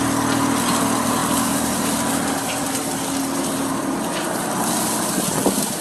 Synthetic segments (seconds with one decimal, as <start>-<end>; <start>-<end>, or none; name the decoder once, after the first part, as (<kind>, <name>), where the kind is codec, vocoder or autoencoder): 1.2-4.7 (vocoder, BigVGAN v2)